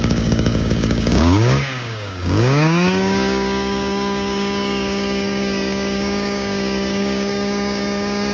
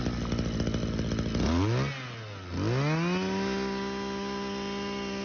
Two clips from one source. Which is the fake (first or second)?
first